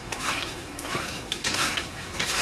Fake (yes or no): yes